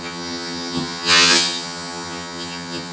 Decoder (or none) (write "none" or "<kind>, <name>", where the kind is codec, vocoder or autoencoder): vocoder, HiFi-GAN